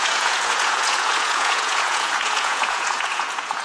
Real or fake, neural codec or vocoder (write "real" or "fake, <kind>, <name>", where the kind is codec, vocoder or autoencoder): fake, vocoder, Vocos